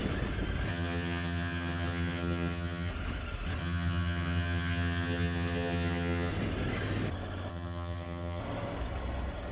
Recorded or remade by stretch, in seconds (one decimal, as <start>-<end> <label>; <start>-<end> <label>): 0.0-0.7 recorded; 0.7-2.9 remade; 2.9-3.6 recorded; 3.6-6.3 remade; 6.3-7.5 recorded; 7.5-8.4 remade; 8.4-9.5 recorded